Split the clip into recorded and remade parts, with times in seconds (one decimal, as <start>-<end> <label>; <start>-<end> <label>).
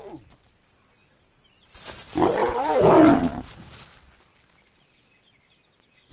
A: 0.0-2.4 recorded; 2.4-2.9 remade; 2.9-6.1 recorded